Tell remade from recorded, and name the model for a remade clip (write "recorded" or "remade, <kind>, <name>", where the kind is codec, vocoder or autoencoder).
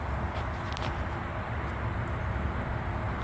recorded